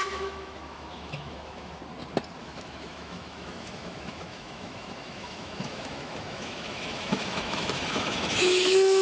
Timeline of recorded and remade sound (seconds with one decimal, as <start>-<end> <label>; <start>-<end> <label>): 0.0-1.8 remade; 1.8-2.4 recorded; 2.4-9.0 remade